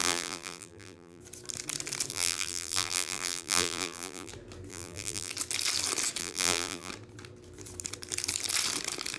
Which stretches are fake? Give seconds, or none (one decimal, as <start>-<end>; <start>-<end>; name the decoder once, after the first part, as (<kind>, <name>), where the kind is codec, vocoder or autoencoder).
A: 0.0-1.2 (vocoder, BigVGAN v2); 2.1-4.3; 4.7-5.3; 6.2-6.9